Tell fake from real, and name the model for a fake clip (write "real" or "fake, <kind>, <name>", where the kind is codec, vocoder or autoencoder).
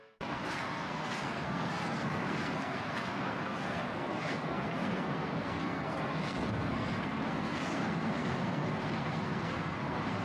fake, codec, SNAC